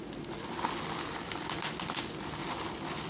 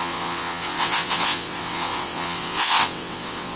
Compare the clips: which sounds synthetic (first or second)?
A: second